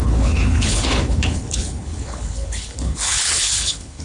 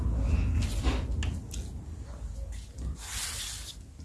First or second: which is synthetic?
first